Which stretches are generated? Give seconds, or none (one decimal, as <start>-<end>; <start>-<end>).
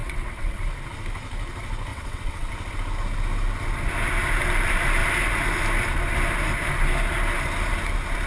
0.0-0.6; 1.9-2.5